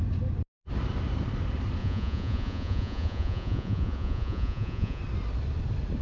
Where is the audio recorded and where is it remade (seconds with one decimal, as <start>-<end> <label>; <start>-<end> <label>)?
0.0-1.8 recorded; 1.8-5.0 remade; 5.0-6.0 recorded